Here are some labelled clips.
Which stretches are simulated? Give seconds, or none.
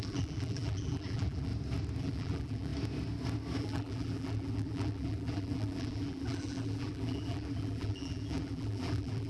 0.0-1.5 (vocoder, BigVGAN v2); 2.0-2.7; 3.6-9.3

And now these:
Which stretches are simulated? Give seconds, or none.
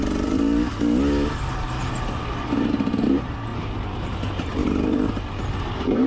2.7-3.5 (vocoder, BigVGAN v2); 4.0-4.6; 5.6-6.1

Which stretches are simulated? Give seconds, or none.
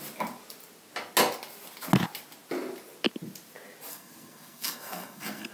3.9-5.5 (codec, SNAC)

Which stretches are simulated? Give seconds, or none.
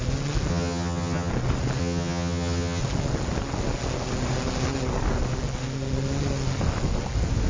0.5-1.3 (vocoder, HiFi-GAN); 1.8-2.8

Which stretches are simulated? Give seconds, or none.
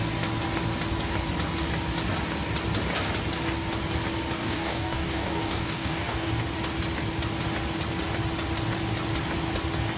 4.4-6.3 (codec, DAC)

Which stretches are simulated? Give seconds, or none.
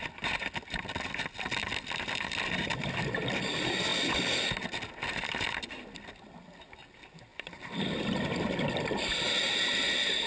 7.3-9.3 (vocoder, BigVGAN v2)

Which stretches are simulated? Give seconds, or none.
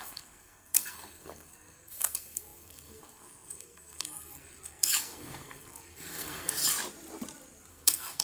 0.0-6.6 (codec, SNAC); 7.7-8.2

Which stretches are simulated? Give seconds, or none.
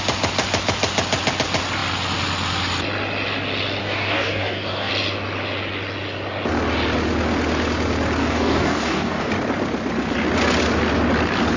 3.8-4.9 (codec, DAC); 8.2-9.3